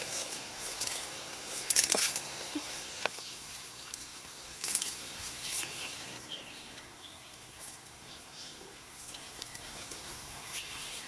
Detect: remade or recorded remade